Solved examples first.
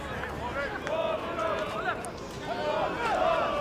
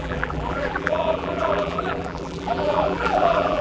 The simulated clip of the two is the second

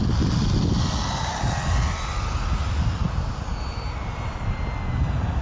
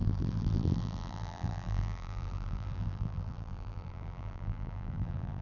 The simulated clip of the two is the second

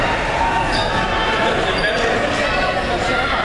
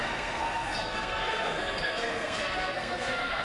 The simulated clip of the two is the second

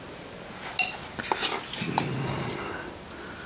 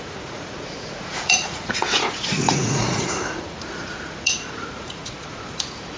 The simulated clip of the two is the second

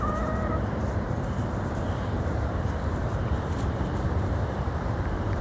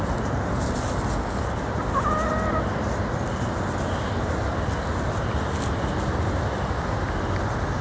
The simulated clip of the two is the first